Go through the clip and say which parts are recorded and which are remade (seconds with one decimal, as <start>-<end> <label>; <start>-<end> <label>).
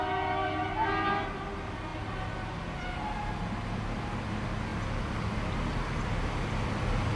0.0-7.2 recorded